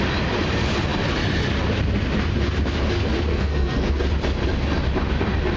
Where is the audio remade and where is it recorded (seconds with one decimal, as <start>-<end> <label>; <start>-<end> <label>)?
0.0-3.3 recorded; 3.3-4.0 remade; 4.0-5.6 recorded